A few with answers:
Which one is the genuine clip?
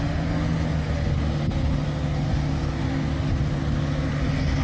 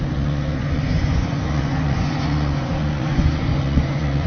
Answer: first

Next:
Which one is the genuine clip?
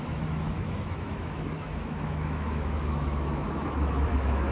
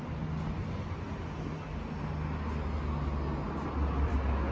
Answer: second